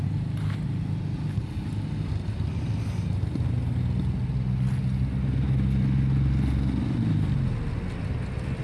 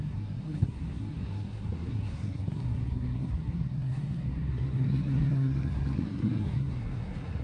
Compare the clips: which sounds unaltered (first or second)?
first